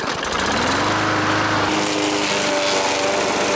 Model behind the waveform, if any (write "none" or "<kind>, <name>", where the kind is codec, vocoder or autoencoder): none